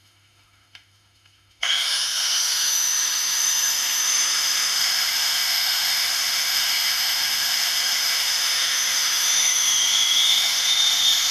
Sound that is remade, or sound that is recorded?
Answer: remade